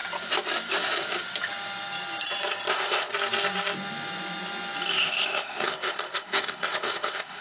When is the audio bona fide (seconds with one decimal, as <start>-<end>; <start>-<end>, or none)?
0.0-2.7; 3.1-4.9